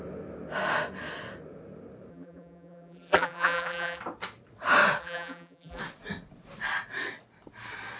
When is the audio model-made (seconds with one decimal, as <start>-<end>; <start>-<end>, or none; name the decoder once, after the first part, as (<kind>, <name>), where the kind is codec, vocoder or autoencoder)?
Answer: 2.1-4.0 (vocoder, BigVGAN v2); 5.0-5.8